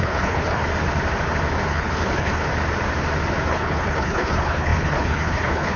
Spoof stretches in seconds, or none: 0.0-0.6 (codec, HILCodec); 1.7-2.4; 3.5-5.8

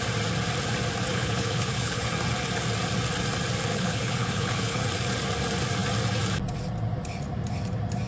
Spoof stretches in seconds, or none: 1.1-2.1 (codec, HILCodec); 3.7-4.8

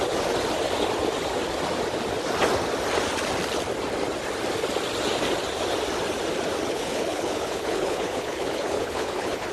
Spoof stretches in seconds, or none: 6.7-9.5 (codec, HILCodec)

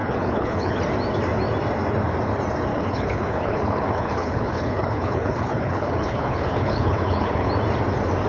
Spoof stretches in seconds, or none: 0.0-0.8 (codec, HILCodec); 2.7-7.5

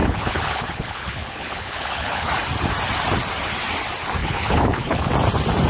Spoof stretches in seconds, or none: 0.0-2.3 (codec, HILCodec); 4.2-5.1